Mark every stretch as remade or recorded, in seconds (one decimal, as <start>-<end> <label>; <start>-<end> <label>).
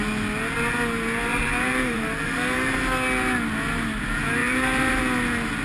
0.0-1.3 recorded; 1.3-2.8 remade; 2.8-4.4 recorded; 4.4-5.0 remade; 5.0-5.6 recorded